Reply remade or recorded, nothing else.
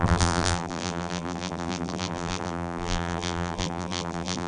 remade